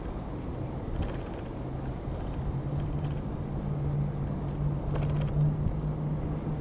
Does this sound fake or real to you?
real